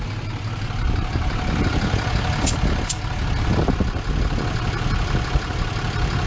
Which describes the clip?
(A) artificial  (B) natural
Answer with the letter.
B